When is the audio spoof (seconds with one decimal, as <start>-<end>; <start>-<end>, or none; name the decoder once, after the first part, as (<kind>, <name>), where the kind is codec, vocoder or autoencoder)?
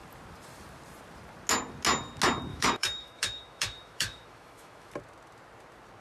2.5-4.9 (autoencoder, DAC-VAE)